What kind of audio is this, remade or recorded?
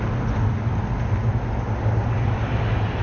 recorded